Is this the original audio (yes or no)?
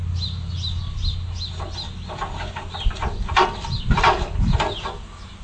yes